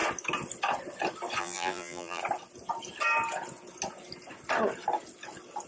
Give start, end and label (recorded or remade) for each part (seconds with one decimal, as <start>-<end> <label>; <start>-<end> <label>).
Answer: 0.0-1.4 recorded; 1.4-2.2 remade; 2.2-5.7 recorded